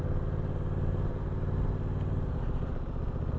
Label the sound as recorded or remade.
recorded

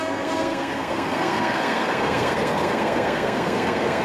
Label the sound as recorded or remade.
remade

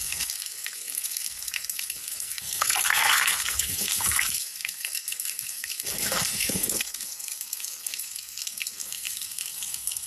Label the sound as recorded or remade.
remade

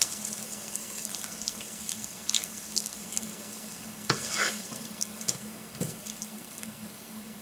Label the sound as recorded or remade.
remade